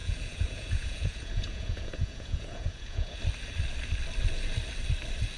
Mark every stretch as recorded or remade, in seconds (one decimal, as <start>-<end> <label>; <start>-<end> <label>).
0.0-3.2 remade; 3.2-5.4 recorded